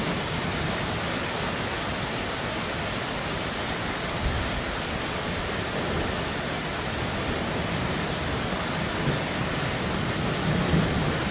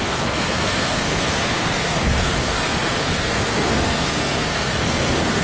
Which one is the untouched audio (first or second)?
first